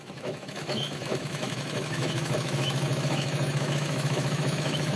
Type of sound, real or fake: fake